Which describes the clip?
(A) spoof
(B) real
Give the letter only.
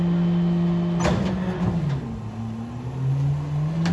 B